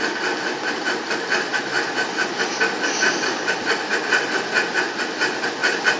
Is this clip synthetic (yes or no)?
no